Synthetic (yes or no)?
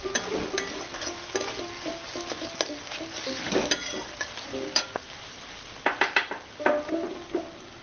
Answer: no